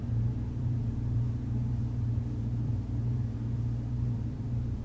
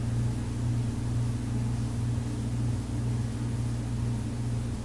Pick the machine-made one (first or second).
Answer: first